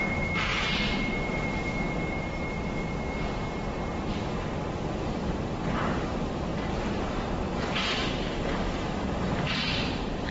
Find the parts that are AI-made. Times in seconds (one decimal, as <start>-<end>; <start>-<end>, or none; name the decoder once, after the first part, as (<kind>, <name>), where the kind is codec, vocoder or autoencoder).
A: 0.0-10.3 (vocoder, BigVGAN v2)

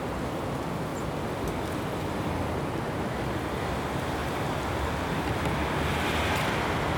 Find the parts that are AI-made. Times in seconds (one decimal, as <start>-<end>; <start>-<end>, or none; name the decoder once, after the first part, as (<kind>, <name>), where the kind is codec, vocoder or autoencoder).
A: 4.2-5.5 (vocoder, BigVGAN v2)

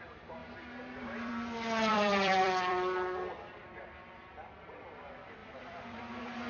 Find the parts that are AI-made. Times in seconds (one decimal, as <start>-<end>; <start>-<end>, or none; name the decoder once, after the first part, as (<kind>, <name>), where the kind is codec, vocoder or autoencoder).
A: 0.4-1.3 (vocoder, BigVGAN v2); 1.9-4.4; 5.4-6.5

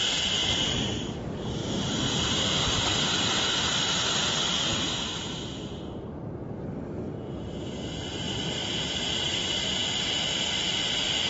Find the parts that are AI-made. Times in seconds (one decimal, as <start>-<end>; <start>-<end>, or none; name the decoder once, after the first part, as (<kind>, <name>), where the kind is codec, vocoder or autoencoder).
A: 0.0-1.6 (vocoder, BigVGAN v2); 2.1-4.7; 8.2-9.8

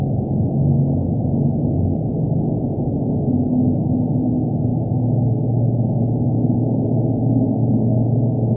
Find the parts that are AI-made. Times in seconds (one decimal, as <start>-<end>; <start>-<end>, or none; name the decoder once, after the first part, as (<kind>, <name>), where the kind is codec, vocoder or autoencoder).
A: none